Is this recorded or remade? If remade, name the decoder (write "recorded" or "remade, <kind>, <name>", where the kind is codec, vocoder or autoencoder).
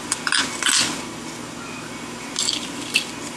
recorded